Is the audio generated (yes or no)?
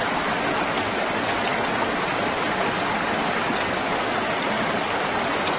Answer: no